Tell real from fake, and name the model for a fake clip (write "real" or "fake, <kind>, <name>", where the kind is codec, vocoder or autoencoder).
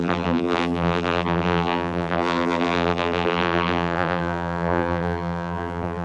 fake, vocoder, BigVGAN v2